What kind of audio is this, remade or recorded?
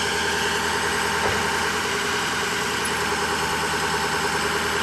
recorded